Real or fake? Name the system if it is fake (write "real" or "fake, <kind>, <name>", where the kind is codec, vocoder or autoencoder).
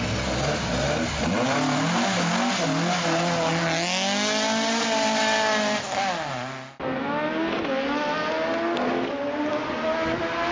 real